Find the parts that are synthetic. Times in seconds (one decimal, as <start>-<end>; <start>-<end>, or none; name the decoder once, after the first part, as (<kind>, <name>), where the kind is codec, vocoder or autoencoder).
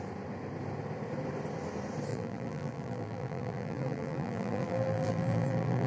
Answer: 2.1-5.9 (vocoder, BigVGAN v2)